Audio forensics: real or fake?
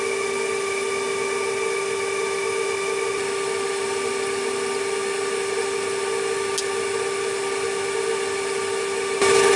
real